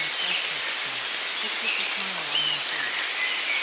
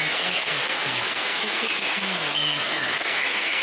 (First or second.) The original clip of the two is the first